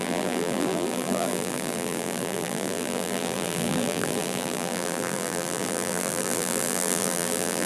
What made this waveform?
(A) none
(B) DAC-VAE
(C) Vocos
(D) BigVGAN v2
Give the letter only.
D